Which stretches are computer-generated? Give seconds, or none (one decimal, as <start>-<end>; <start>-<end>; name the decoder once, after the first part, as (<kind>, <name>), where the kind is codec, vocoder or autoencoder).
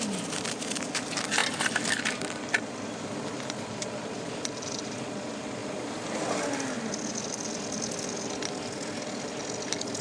none